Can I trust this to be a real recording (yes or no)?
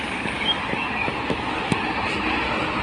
yes